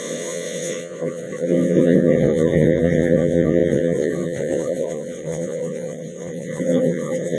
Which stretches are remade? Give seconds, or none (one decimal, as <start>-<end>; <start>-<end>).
0.0-7.4

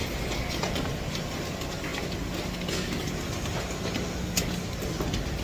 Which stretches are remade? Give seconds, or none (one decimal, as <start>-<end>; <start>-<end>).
none

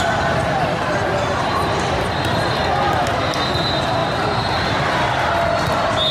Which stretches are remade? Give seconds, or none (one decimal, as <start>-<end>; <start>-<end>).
4.0-4.6

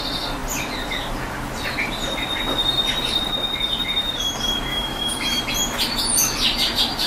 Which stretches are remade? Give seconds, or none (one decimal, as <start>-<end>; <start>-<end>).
4.7-5.4

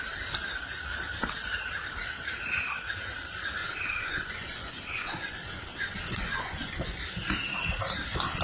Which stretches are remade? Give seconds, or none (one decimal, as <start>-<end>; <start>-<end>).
3.6-7.0

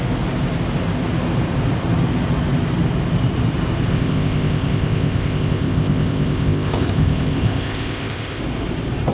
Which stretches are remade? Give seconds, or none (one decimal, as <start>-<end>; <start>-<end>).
3.9-8.4

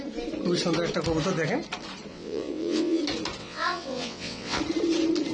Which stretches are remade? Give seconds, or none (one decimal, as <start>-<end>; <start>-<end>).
2.1-3.0; 3.4-4.6

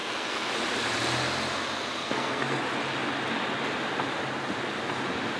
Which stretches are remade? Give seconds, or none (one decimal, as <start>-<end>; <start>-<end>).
0.0-0.5; 2.0-2.6